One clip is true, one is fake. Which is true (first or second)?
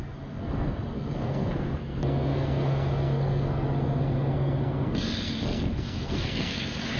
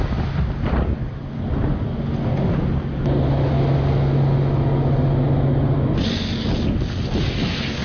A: second